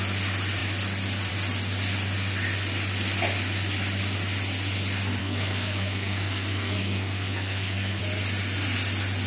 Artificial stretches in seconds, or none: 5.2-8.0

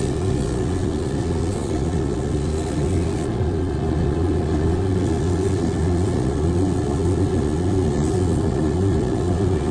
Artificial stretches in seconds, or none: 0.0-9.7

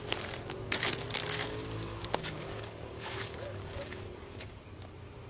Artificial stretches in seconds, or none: 1.4-4.6

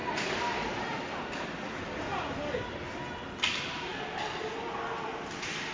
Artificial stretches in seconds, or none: none